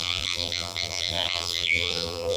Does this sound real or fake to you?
fake